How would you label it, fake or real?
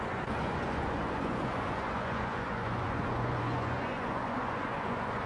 fake